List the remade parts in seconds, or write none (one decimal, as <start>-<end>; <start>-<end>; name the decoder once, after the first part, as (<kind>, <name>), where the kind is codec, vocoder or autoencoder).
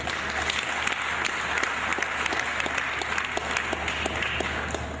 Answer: none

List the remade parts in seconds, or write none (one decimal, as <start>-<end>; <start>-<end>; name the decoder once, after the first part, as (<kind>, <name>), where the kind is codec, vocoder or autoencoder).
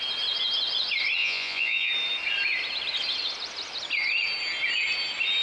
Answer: 1.2-1.9 (vocoder, Vocos)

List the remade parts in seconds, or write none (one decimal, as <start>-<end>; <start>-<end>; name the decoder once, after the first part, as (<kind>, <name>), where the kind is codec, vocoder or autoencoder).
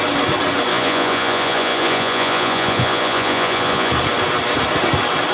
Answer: 0.7-3.9 (vocoder, Vocos)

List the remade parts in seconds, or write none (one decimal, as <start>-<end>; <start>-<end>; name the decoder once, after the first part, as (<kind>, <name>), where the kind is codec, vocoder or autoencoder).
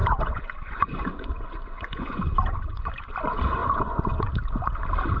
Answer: 0.0-2.9 (vocoder, Vocos); 3.6-4.3